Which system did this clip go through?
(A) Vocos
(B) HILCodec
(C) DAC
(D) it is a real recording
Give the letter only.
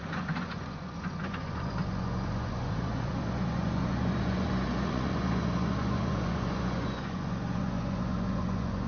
A